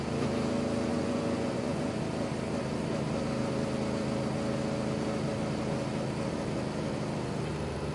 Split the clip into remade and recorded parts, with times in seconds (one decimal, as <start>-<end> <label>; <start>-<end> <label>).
0.0-0.9 recorded; 0.9-2.0 remade; 2.0-7.9 recorded